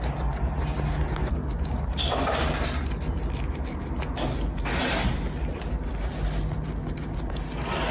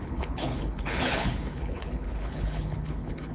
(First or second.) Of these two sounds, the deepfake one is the second